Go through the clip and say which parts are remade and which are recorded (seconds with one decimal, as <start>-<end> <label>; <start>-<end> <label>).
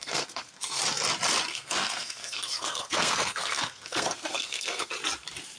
0.0-0.8 remade; 0.8-1.5 recorded; 1.5-4.9 remade; 4.9-5.6 recorded